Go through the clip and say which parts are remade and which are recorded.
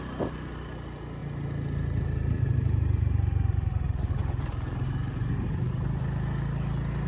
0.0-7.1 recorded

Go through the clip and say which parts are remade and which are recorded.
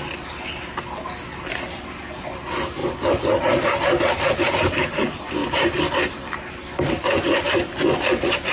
0.0-5.4 recorded; 5.4-6.0 remade; 6.0-8.5 recorded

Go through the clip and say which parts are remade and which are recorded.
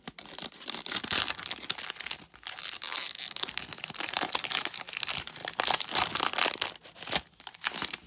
0.0-8.1 recorded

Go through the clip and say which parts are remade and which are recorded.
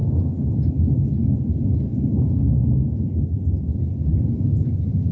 0.0-1.9 recorded; 1.9-2.4 remade; 2.4-4.1 recorded; 4.1-5.1 remade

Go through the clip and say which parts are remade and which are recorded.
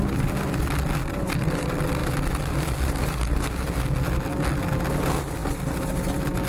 0.0-6.5 recorded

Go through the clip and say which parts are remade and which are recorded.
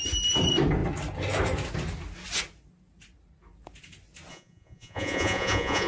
0.0-4.3 recorded; 4.3-5.9 remade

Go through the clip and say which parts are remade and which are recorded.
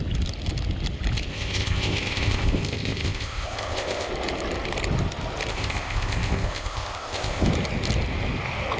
0.0-1.3 recorded; 1.3-4.1 remade; 4.1-5.5 recorded; 5.5-7.5 remade; 7.5-8.8 recorded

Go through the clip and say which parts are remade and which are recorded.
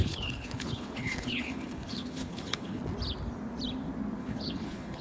0.0-2.8 remade; 2.8-4.2 recorded; 4.2-5.0 remade